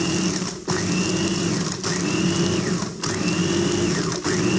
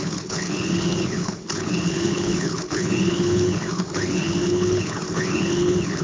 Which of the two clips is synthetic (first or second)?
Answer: second